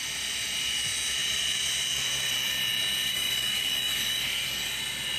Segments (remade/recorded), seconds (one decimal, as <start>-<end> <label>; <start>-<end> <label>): 0.0-3.1 recorded; 3.1-4.7 remade; 4.7-5.2 recorded